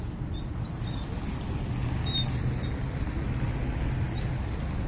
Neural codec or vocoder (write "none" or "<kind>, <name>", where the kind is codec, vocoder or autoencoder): none